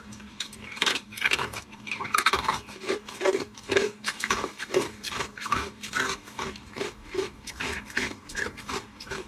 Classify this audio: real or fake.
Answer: fake